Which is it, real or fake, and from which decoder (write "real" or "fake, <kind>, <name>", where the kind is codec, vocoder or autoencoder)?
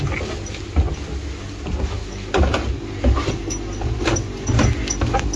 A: real